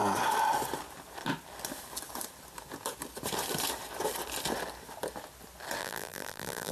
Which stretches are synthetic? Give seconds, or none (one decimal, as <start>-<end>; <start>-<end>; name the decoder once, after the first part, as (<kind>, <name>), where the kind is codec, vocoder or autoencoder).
5.8-6.7 (vocoder, BigVGAN v2)